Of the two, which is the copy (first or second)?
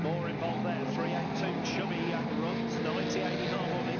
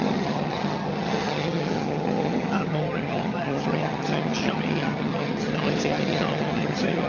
second